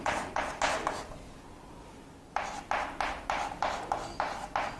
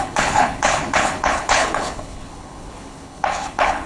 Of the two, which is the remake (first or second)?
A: second